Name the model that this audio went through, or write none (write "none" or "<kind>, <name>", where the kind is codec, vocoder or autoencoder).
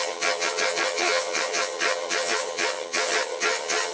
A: vocoder, HiFi-GAN